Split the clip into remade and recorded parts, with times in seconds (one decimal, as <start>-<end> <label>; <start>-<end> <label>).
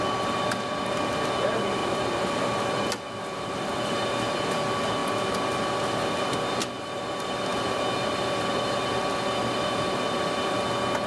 0.0-11.1 recorded